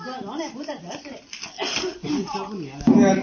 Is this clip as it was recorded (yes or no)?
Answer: yes